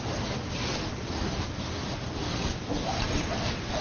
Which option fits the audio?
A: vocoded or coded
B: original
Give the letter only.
B